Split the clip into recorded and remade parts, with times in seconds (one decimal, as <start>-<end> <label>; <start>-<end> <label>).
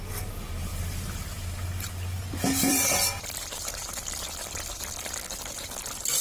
0.0-0.7 recorded; 0.7-4.4 remade; 4.4-6.2 recorded